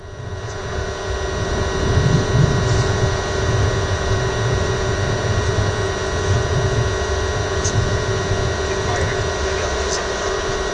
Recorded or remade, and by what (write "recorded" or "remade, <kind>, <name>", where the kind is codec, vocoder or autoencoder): recorded